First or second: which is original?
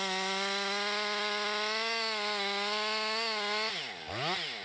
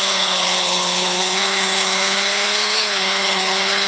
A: first